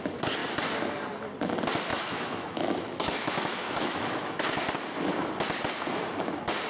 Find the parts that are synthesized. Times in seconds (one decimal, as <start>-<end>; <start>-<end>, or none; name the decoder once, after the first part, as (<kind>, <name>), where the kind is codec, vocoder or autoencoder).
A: 1.9-4.6 (autoencoder, DAC-VAE)